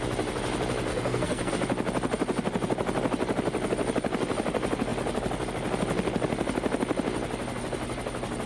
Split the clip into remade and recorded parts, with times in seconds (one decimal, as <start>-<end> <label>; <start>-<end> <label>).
0.0-0.9 recorded; 0.9-1.5 remade; 1.5-8.5 recorded